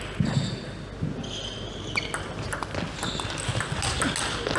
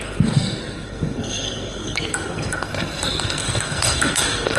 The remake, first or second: second